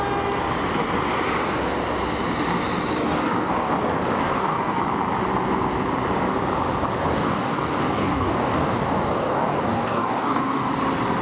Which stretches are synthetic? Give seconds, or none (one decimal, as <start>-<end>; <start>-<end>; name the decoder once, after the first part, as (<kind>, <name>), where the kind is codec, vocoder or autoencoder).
3.0-3.7 (codec, DAC); 4.2-4.8; 7.1-10.7